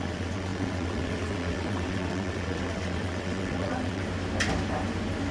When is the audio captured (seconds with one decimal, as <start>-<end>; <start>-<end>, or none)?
4.0-5.3